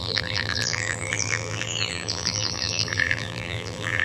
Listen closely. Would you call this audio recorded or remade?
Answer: remade